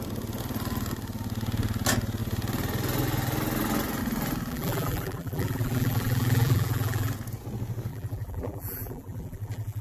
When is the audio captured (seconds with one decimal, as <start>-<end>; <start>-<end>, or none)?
0.0-4.5; 7.1-7.9